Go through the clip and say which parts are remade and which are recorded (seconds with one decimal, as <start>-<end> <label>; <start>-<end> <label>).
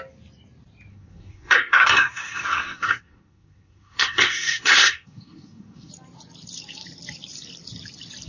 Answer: 0.0-0.9 recorded; 0.9-5.9 remade; 5.9-8.3 recorded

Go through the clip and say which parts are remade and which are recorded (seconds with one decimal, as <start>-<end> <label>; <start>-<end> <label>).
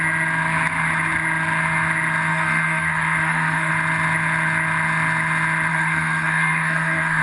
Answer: 0.0-2.3 recorded; 2.3-3.7 remade; 3.7-5.7 recorded; 5.7-7.2 remade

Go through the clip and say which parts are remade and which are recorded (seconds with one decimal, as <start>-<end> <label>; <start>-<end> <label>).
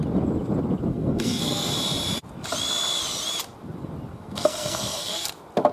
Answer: 0.0-0.9 recorded; 0.9-1.7 remade; 1.7-4.1 recorded; 4.1-5.3 remade; 5.3-5.7 recorded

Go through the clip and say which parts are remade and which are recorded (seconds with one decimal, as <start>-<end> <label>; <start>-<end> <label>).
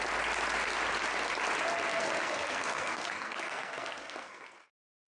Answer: 0.0-1.9 recorded; 1.9-5.1 remade